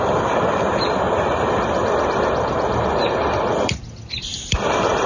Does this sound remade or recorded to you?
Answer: recorded